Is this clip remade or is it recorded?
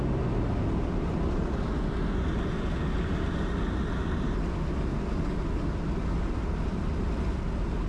recorded